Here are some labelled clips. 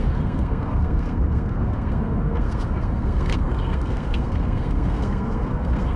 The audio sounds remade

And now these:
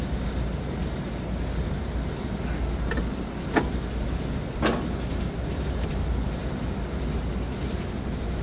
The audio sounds recorded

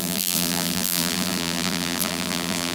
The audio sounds remade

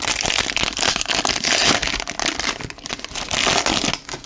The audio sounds recorded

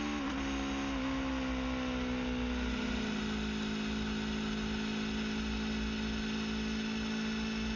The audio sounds recorded